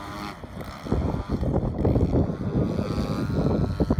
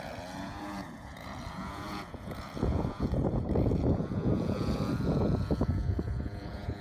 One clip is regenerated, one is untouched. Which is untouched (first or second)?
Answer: first